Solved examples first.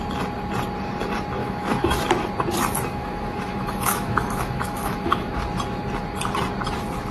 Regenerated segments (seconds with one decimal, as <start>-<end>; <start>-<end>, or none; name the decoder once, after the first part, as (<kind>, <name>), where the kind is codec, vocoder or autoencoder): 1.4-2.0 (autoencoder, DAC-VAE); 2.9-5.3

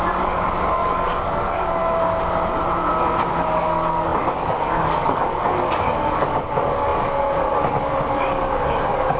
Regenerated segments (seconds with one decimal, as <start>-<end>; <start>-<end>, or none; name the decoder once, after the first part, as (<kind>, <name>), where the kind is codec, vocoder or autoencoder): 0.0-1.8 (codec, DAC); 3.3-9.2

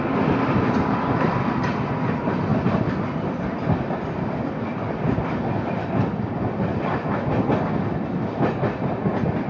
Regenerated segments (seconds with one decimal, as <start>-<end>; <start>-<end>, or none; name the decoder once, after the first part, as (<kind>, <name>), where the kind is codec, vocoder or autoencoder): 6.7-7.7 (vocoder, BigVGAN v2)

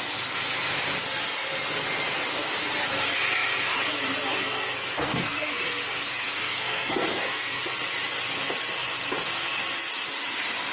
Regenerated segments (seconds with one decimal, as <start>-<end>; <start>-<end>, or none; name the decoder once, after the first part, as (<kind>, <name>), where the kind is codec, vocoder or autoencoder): 4.3-7.6 (codec, SNAC)